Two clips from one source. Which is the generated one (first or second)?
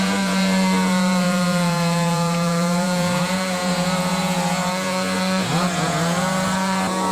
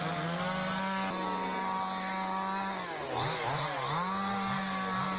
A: first